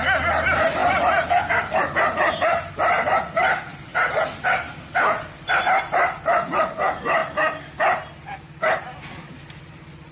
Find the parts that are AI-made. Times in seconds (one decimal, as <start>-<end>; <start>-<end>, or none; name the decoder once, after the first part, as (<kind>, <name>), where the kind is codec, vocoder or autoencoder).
0.0-3.9 (vocoder, BigVGAN v2); 5.8-7.2; 8.8-10.1